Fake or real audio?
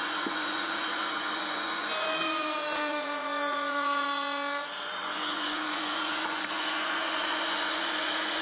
fake